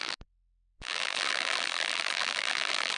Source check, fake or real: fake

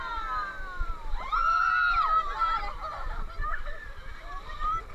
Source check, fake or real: fake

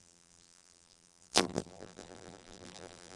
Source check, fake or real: fake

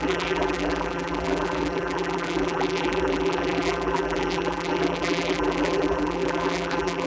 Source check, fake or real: fake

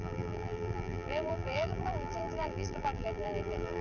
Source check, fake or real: fake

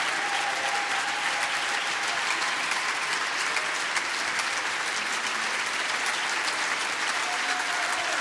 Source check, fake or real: fake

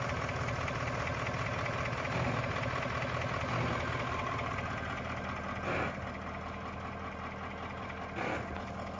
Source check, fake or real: real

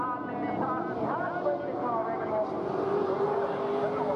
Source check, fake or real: real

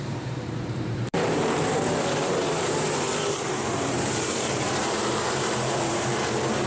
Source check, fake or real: fake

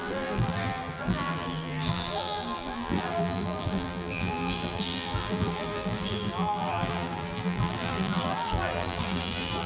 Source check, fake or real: fake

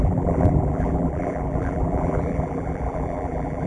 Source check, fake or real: fake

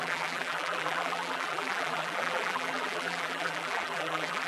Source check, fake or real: fake